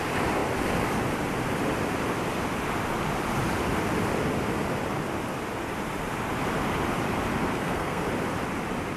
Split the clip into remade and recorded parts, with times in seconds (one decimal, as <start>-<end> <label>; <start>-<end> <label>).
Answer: 0.0-7.5 recorded; 7.5-8.0 remade; 8.0-9.0 recorded